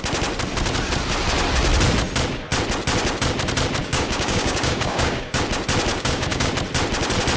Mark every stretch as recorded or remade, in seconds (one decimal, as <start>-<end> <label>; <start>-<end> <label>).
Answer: 0.0-3.8 recorded; 3.8-5.4 remade; 5.4-5.9 recorded; 5.9-6.5 remade; 6.5-7.4 recorded